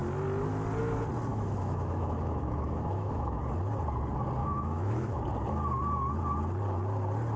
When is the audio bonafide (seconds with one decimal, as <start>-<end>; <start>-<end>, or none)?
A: 0.0-1.3; 3.4-4.4; 5.2-7.4